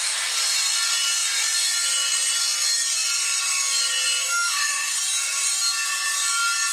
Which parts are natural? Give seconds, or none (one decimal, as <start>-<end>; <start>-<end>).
0.0-4.2; 5.0-6.7